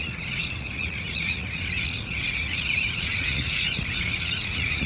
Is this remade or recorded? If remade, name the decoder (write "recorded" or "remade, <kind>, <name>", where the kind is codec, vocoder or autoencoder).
remade, vocoder, Vocos